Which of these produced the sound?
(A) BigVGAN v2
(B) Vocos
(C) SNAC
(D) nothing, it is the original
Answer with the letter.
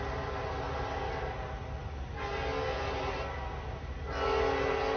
D